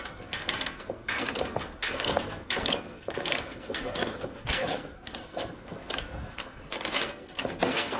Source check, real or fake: fake